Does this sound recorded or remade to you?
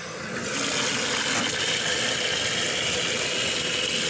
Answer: recorded